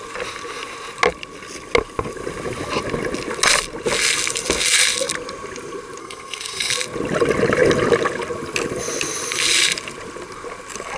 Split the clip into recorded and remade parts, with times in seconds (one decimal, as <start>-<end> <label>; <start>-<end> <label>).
0.0-6.0 recorded; 6.0-6.7 remade; 6.7-11.0 recorded